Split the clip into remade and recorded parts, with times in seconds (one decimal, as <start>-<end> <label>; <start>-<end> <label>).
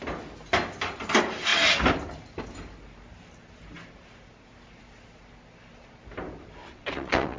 0.0-6.6 recorded; 6.6-7.4 remade